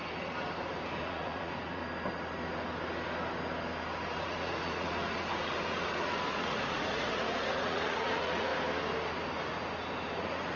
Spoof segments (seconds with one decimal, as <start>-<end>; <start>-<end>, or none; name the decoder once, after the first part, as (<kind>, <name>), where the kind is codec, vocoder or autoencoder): 1.0-1.8 (vocoder, Vocos); 4.2-8.5; 10.2-10.6